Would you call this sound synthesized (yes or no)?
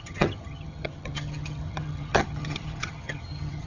yes